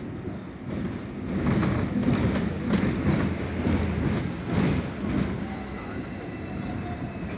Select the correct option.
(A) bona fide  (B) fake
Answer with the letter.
A